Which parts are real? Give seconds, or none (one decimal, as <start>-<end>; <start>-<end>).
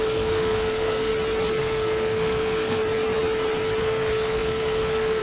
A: 1.1-1.6; 2.8-3.8